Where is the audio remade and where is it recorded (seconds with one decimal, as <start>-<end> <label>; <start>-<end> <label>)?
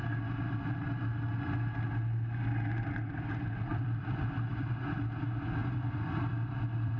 0.0-3.7 recorded; 3.7-4.8 remade; 4.8-5.6 recorded; 5.6-7.0 remade